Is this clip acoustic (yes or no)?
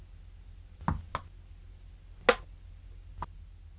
yes